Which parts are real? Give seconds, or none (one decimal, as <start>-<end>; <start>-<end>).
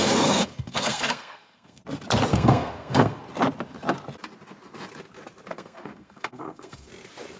1.8-2.3; 3.2-5.5; 6.9-7.4